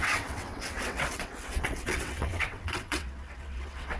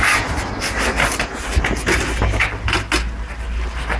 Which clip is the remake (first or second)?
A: first